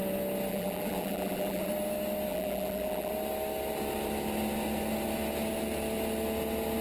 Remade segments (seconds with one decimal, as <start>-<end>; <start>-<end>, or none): 0.5-1.7; 2.3-3.1